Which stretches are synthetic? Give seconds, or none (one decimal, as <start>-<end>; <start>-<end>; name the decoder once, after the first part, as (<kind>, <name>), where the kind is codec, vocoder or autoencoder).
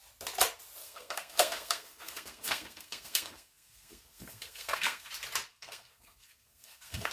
0.8-5.1 (codec, SNAC); 5.5-7.1